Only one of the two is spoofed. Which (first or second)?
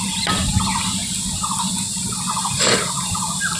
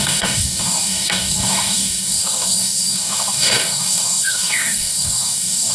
second